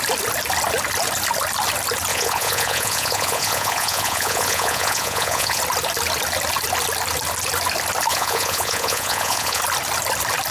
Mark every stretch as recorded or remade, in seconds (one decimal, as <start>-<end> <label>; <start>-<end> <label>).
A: 0.0-2.1 recorded; 2.1-5.6 remade; 5.6-8.1 recorded; 8.1-9.6 remade; 9.6-10.5 recorded